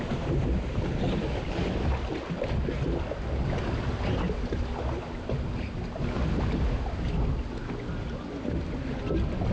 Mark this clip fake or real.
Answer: real